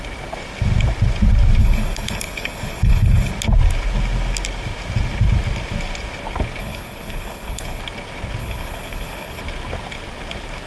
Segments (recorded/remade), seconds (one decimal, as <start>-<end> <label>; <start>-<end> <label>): 0.0-1.6 recorded; 1.6-3.3 remade; 3.3-6.6 recorded; 6.6-7.8 remade; 7.8-8.4 recorded; 8.4-9.4 remade; 9.4-10.7 recorded